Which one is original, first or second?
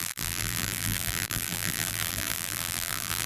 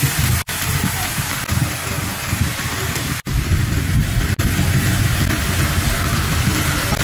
second